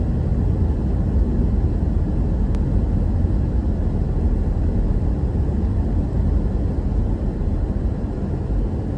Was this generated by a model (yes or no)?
no